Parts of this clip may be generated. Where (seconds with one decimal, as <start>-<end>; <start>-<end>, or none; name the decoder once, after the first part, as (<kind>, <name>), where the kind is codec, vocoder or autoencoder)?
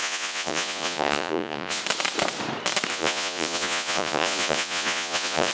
0.0-1.8 (vocoder, Vocos); 2.9-5.5